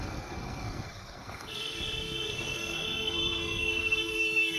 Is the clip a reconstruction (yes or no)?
yes